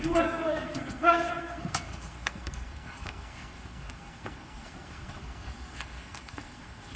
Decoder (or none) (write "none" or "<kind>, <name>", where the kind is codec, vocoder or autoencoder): codec, SNAC